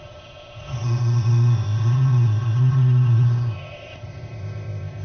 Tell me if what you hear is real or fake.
fake